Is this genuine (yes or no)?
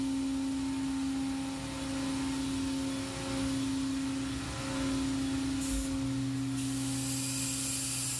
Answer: yes